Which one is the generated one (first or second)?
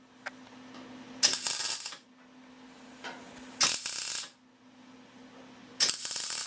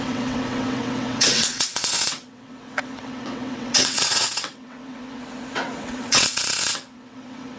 second